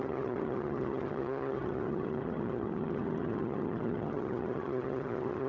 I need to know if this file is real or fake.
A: fake